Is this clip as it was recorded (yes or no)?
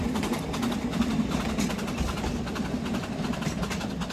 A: yes